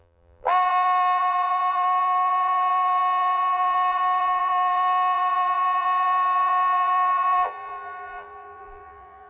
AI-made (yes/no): yes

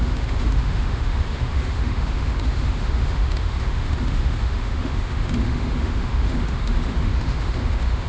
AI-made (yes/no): yes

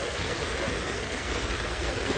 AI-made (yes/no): yes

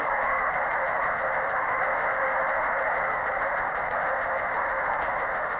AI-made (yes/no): yes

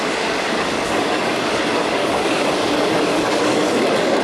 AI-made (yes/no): yes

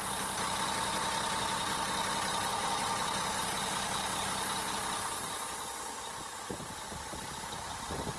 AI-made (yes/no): no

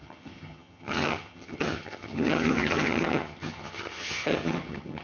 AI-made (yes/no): yes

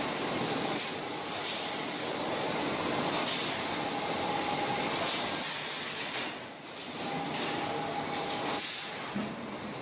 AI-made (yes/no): no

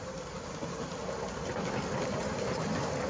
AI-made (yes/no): no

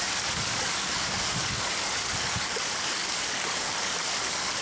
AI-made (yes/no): yes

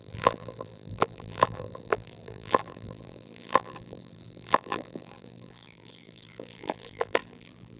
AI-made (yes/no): yes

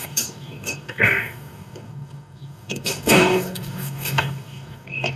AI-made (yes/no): yes